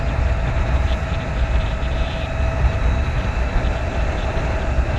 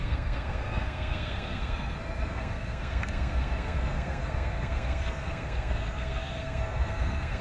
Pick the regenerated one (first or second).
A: second